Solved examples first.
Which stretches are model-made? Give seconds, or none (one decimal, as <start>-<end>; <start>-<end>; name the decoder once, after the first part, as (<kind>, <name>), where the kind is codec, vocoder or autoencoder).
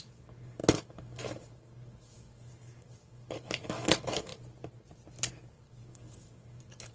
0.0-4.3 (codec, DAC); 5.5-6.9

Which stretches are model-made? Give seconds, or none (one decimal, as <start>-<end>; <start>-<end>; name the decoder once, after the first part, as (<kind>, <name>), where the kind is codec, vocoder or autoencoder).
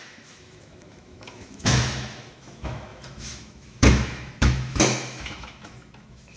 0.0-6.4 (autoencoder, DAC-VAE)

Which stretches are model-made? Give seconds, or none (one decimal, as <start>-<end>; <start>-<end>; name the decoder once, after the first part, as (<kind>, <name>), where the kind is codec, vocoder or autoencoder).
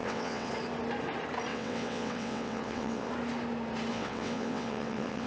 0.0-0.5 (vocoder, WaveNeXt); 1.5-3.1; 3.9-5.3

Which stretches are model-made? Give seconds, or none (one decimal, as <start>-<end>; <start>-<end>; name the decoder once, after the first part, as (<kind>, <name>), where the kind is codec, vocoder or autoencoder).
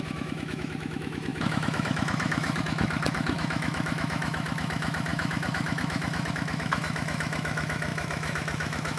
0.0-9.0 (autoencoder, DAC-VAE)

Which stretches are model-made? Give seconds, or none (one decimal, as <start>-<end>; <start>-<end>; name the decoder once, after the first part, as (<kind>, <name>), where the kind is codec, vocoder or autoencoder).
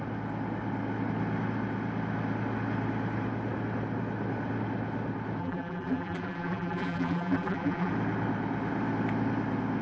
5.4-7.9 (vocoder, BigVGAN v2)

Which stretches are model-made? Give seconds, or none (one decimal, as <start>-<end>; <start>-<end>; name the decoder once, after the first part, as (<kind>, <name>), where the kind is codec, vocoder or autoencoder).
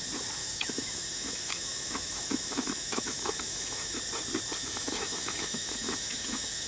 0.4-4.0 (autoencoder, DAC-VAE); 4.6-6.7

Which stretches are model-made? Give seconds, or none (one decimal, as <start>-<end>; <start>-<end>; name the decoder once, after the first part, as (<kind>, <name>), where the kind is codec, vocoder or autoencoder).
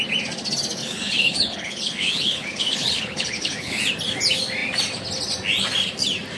0.8-3.8 (codec, HILCodec)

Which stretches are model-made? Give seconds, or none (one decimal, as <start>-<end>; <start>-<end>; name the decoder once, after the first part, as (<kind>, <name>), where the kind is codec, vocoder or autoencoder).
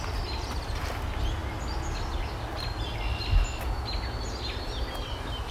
none